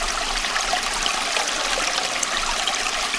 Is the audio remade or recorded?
recorded